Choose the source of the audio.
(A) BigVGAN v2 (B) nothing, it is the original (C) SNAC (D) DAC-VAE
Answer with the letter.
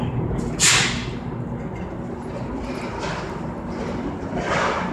B